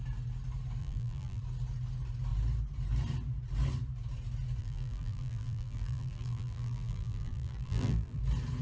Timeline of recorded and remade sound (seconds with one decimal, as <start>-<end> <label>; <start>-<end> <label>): 0.0-0.8 recorded; 0.8-1.4 remade; 1.4-4.6 recorded; 4.6-8.2 remade; 8.2-8.6 recorded